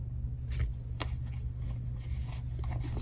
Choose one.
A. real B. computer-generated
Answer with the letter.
A